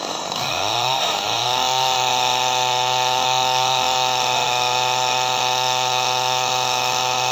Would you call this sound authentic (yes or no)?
no